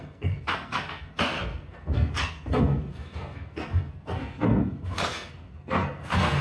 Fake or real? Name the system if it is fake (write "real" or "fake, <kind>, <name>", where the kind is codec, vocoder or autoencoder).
fake, codec, SNAC